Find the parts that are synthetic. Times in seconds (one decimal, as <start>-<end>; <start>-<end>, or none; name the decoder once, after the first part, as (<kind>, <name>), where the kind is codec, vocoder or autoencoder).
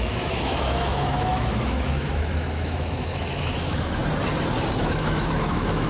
0.0-4.0 (autoencoder, DAC-VAE); 4.8-5.9